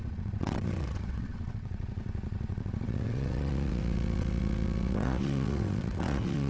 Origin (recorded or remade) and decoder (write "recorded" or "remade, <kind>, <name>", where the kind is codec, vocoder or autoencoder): remade, vocoder, WaveNeXt